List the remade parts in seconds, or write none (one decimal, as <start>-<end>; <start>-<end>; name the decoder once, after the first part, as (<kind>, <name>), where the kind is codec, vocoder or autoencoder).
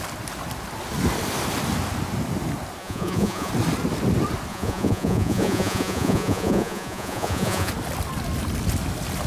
2.8-3.5 (vocoder, Vocos); 4.5-7.7